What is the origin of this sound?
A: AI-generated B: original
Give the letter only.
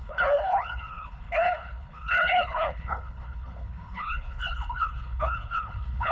A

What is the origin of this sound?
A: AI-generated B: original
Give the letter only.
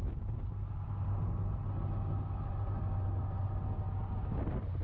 B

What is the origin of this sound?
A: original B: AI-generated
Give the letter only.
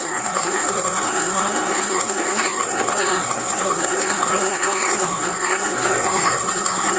B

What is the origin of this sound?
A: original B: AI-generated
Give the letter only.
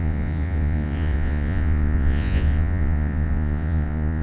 B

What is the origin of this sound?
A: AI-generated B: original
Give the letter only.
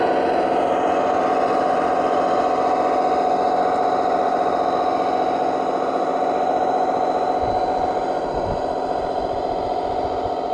B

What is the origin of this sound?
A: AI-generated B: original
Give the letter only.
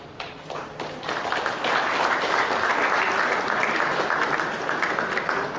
B